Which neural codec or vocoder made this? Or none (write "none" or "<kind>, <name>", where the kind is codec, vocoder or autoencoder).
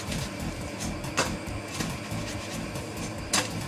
none